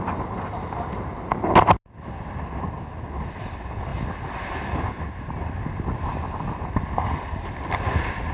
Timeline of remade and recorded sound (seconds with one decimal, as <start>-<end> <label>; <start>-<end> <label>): 0.0-8.3 recorded